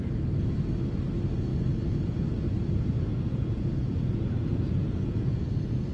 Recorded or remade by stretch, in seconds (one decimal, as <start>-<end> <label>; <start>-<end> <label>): 0.0-3.1 recorded; 3.1-5.9 remade